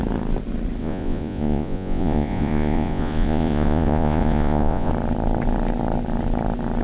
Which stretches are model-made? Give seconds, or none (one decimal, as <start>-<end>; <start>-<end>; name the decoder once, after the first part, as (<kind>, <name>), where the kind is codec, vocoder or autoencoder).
0.8-4.9 (vocoder, Vocos)